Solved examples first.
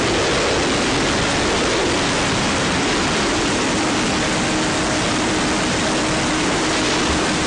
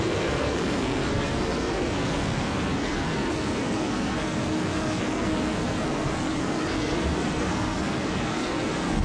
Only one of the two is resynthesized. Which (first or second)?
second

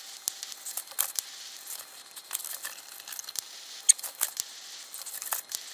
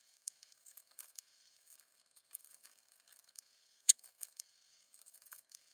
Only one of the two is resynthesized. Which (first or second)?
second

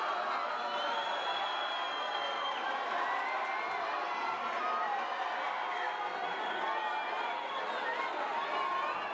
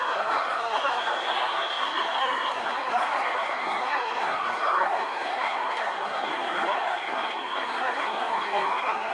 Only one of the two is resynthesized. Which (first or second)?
second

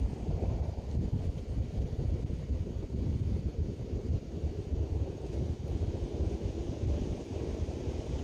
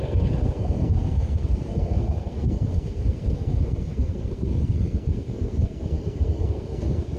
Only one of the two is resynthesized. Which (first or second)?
second